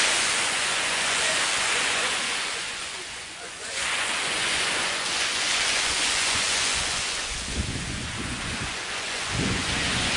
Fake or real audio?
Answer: fake